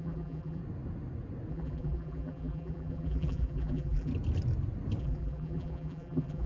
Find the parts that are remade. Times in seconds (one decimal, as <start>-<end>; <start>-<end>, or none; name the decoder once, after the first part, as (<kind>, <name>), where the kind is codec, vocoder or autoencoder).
0.0-0.6 (vocoder, BigVGAN v2); 1.5-4.1; 5.0-6.5